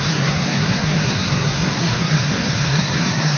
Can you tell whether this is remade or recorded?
remade